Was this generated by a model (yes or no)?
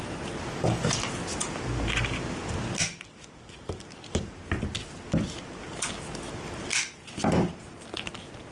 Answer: no